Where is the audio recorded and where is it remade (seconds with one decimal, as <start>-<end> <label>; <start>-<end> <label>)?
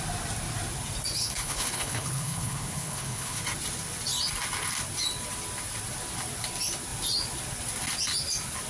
0.0-1.2 recorded; 1.2-3.4 remade; 3.4-8.7 recorded